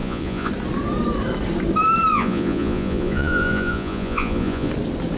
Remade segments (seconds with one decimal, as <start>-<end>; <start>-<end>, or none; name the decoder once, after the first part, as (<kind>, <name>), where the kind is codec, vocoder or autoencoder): 0.0-0.5 (vocoder, Vocos); 2.1-4.7